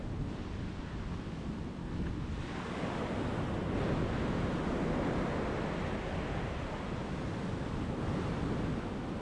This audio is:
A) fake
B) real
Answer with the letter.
B